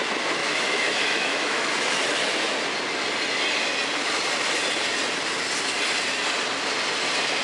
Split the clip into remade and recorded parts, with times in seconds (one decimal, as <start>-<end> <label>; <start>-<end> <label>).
0.0-0.4 recorded; 0.4-1.7 remade; 1.7-7.4 recorded